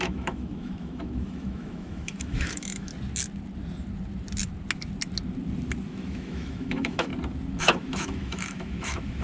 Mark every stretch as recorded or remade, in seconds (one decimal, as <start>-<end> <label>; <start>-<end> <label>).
0.0-2.9 remade; 2.9-5.9 recorded; 5.9-7.1 remade; 7.1-7.6 recorded; 7.6-9.2 remade